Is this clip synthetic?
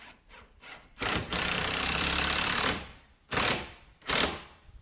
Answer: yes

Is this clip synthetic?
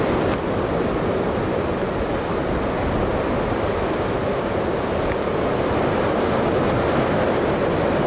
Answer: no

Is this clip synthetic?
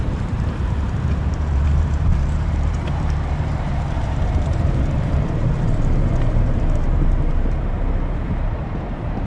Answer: yes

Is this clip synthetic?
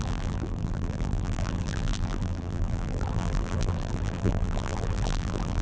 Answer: yes